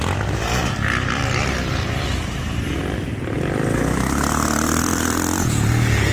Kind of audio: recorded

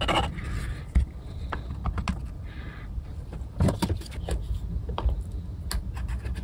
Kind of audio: recorded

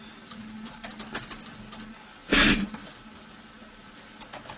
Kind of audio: recorded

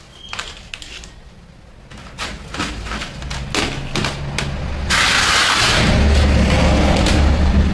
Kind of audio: recorded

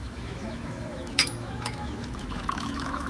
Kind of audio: remade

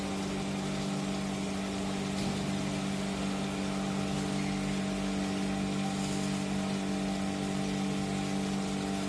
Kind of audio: recorded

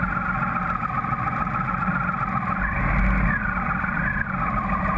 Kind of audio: recorded